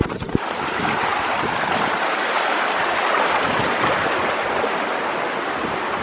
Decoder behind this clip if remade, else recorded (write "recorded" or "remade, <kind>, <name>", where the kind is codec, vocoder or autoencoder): recorded